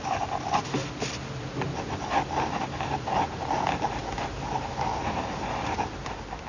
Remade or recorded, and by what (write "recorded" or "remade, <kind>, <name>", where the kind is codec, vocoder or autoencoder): recorded